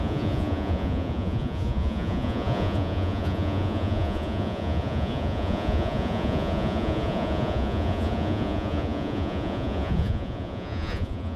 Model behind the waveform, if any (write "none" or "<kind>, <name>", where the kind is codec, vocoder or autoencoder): vocoder, Vocos